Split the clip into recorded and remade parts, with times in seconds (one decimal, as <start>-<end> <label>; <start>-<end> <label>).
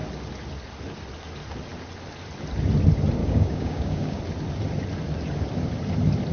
0.0-3.2 recorded; 3.2-4.2 remade; 4.2-6.3 recorded